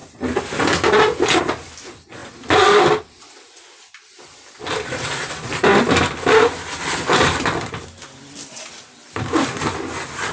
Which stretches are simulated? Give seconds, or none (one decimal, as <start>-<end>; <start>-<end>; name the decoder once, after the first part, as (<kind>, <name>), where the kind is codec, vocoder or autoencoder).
none